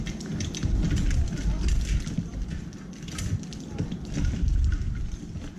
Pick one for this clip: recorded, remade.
recorded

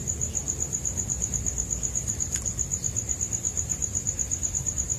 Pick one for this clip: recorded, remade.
recorded